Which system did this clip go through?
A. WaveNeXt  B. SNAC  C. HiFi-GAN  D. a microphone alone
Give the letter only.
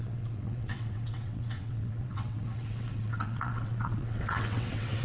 A